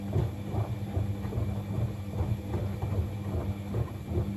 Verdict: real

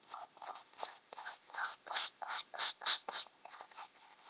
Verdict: fake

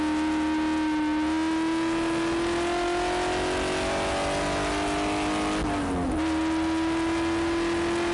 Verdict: real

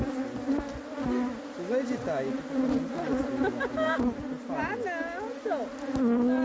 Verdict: real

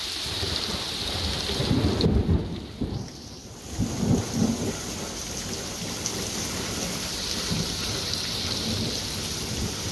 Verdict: fake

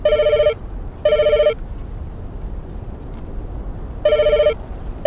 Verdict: real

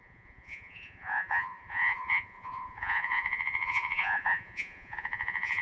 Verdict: fake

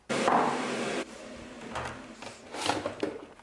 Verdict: real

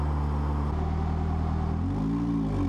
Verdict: real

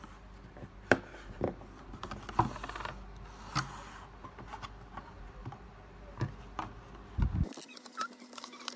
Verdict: real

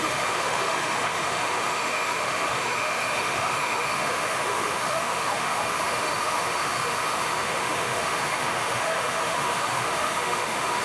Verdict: fake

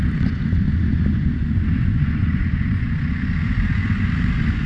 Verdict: fake